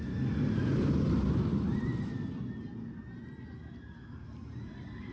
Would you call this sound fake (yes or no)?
no